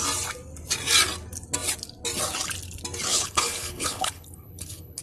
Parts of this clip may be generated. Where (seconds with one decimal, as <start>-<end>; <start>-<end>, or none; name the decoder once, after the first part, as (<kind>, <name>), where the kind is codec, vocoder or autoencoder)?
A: 3.1-5.0 (codec, HILCodec)